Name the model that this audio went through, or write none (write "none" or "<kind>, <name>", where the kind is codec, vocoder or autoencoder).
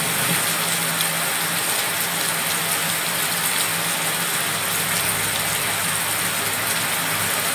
none